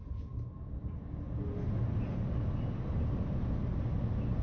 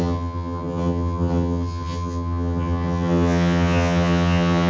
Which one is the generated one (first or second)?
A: second